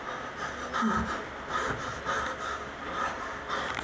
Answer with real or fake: real